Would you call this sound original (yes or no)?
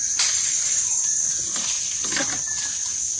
yes